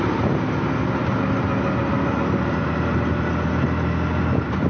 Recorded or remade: recorded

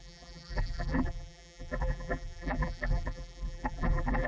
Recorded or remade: remade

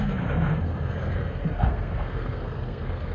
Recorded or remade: remade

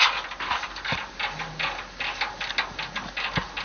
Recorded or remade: recorded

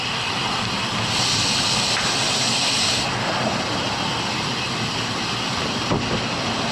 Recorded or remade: recorded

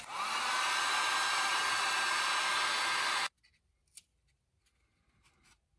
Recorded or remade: recorded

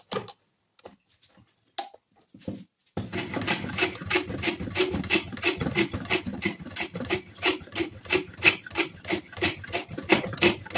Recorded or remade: recorded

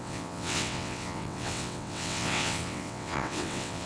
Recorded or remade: remade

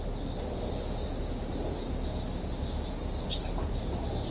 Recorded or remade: recorded